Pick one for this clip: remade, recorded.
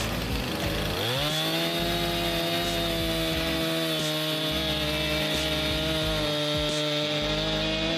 recorded